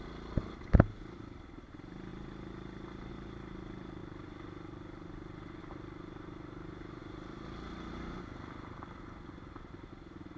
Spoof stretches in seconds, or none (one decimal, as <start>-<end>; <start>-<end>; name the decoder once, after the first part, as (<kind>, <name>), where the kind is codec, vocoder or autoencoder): none